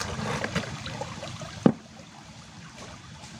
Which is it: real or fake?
real